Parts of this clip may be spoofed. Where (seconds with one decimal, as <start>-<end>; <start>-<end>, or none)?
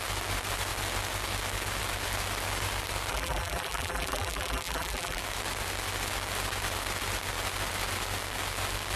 3.1-5.2